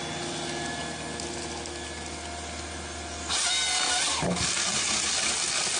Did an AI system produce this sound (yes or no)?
no